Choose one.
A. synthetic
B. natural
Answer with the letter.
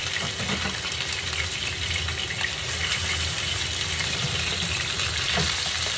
B